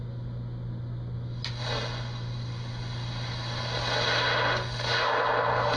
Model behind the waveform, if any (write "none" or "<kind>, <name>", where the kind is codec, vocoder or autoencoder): none